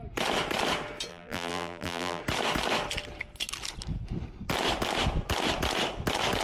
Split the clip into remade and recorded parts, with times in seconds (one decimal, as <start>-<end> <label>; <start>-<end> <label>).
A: 0.0-1.1 recorded; 1.1-2.2 remade; 2.2-6.4 recorded